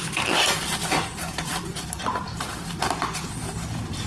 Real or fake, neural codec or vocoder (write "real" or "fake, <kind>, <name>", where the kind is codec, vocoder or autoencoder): real